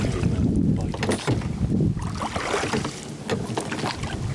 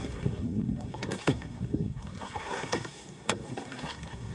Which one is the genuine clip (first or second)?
first